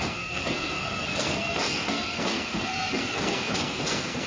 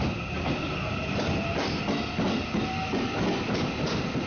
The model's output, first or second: first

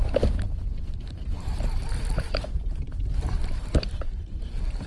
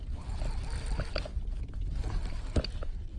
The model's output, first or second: first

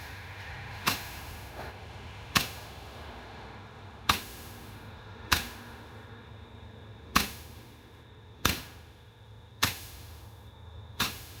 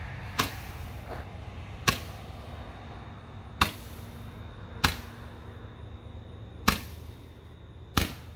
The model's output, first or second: first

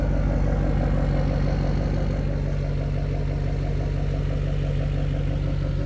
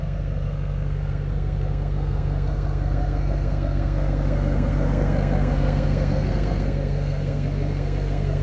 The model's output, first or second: second